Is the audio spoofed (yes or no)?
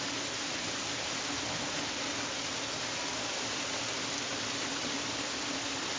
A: no